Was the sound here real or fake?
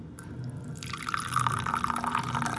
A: real